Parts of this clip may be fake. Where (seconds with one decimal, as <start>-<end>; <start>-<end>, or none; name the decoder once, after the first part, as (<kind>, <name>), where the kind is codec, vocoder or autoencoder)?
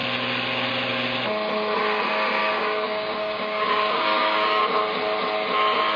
2.4-4.6 (codec, DAC)